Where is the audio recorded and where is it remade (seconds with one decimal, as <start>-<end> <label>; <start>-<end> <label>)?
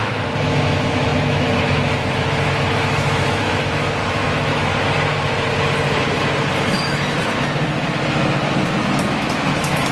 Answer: 0.0-4.6 remade; 4.6-9.1 recorded; 9.1-9.9 remade